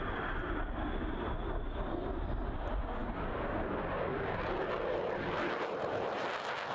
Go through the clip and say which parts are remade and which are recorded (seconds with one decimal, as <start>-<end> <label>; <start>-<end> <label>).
0.0-6.7 recorded